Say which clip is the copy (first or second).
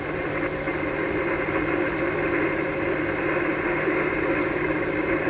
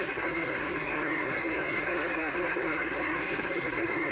second